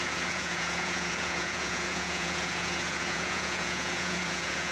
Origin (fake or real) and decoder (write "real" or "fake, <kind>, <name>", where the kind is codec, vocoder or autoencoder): fake, vocoder, Vocos